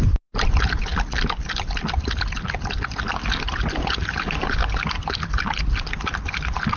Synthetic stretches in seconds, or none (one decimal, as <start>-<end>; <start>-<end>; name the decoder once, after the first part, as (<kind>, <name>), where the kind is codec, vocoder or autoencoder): none